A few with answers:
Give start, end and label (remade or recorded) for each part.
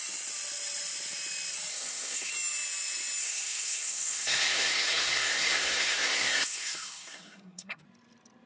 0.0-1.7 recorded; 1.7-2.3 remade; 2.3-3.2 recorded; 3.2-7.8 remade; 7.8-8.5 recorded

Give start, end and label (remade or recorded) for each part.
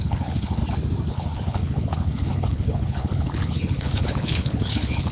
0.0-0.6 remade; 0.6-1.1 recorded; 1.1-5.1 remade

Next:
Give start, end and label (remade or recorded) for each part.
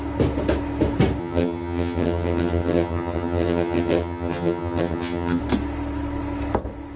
0.0-1.2 recorded; 1.2-5.4 remade; 5.4-7.0 recorded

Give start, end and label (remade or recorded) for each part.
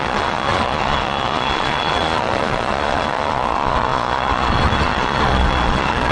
0.0-6.1 remade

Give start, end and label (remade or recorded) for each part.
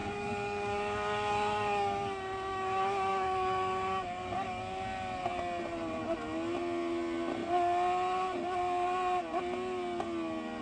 0.0-4.6 remade; 4.6-10.6 recorded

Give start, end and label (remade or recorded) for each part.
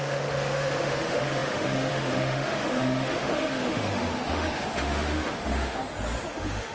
0.0-5.8 remade; 5.8-6.3 recorded; 6.3-6.7 remade